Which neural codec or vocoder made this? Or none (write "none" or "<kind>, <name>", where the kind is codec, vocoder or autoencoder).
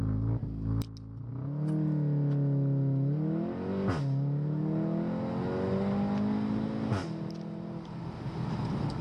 none